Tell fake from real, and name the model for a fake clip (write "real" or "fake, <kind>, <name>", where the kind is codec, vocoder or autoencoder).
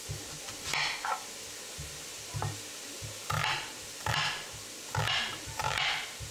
real